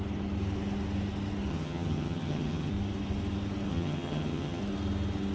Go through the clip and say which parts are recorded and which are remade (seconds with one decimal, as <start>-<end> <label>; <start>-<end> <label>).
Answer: 0.0-1.5 recorded; 1.5-2.7 remade; 2.7-3.7 recorded; 3.7-4.6 remade; 4.6-5.3 recorded